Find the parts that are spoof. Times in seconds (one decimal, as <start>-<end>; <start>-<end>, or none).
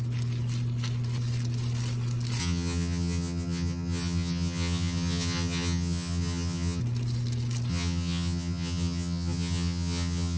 2.4-6.8; 7.7-10.4